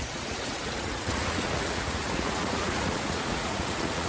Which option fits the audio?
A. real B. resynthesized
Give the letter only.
B